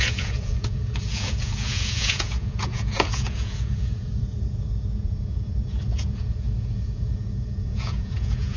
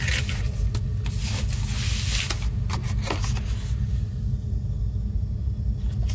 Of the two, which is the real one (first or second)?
second